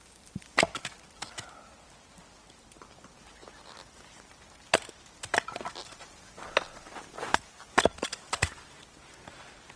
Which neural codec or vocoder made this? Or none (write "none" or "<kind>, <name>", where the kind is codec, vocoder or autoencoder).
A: none